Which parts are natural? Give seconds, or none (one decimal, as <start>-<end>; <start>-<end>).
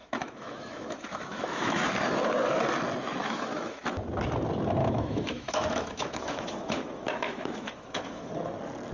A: 1.9-3.2; 3.8-4.8; 8.3-8.9